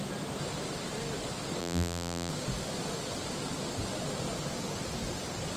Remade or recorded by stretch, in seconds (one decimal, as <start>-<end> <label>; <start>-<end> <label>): 0.0-1.6 recorded; 1.6-2.3 remade; 2.3-5.6 recorded